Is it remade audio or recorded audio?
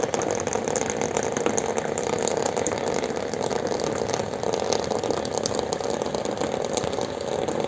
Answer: recorded